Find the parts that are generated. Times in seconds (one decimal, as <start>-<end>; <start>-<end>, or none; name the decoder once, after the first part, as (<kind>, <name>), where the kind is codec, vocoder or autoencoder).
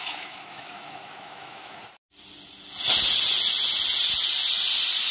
0.0-1.8 (autoencoder, DAC-VAE)